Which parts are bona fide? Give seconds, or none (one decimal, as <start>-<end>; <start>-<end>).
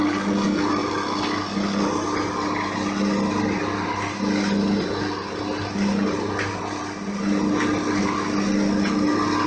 0.0-0.8; 1.9-9.5